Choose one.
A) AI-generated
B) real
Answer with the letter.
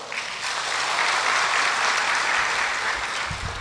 B